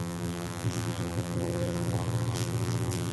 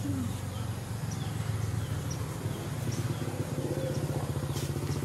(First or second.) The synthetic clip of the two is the first